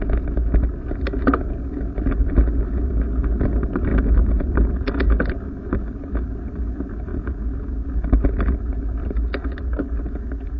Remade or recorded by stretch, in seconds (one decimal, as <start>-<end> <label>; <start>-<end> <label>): 0.0-7.1 recorded; 7.1-7.7 remade; 7.7-10.6 recorded